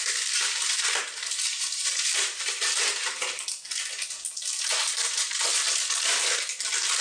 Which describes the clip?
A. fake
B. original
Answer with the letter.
B